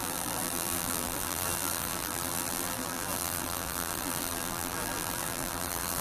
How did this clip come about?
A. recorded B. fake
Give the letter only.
B